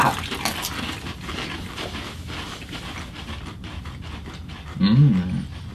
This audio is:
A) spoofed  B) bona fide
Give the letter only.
B